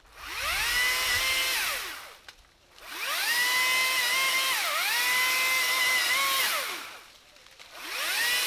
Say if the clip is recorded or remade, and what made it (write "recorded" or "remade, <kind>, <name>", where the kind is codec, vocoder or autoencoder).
recorded